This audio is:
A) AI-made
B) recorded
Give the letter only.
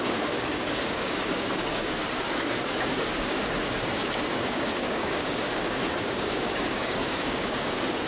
A